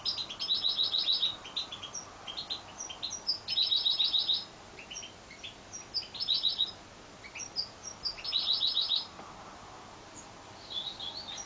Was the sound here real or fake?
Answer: real